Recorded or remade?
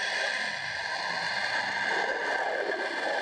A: recorded